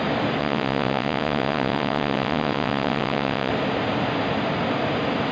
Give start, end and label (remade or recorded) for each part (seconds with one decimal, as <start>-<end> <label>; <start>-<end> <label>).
0.0-0.4 recorded; 0.4-3.5 remade; 3.5-5.3 recorded